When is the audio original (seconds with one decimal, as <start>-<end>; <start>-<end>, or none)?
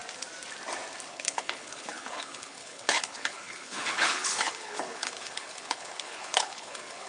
0.0-1.1